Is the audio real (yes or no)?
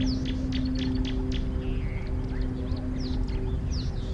yes